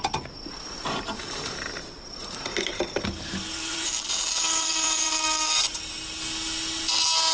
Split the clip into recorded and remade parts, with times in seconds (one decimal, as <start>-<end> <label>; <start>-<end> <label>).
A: 0.0-3.5 recorded; 3.5-5.6 remade; 5.6-7.3 recorded